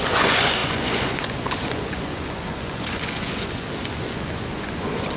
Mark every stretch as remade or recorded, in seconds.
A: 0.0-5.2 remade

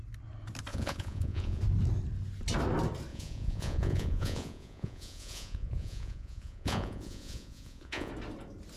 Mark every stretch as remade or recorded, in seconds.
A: 0.0-0.7 recorded; 0.7-1.6 remade; 1.6-3.1 recorded; 3.1-8.1 remade; 8.1-8.8 recorded

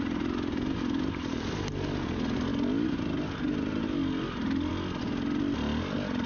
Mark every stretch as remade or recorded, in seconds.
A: 0.0-6.3 recorded

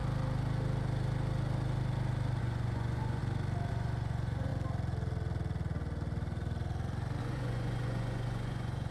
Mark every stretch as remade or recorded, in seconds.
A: 0.0-2.4 recorded; 2.4-3.2 remade; 3.2-3.7 recorded; 3.7-4.5 remade; 4.5-7.2 recorded; 7.2-8.9 remade

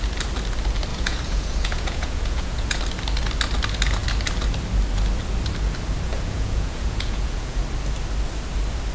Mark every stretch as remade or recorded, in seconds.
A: 0.0-0.9 recorded; 0.9-2.8 remade; 2.8-6.1 recorded; 6.1-7.6 remade; 7.6-8.9 recorded

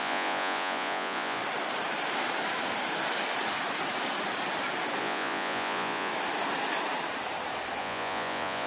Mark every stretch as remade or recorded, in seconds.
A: 0.0-1.4 remade; 1.4-5.0 recorded; 5.0-6.1 remade; 6.1-7.8 recorded; 7.8-8.7 remade